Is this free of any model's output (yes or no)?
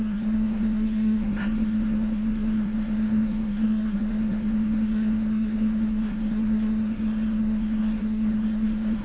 no